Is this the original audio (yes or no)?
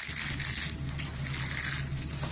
yes